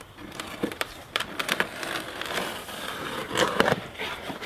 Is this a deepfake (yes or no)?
yes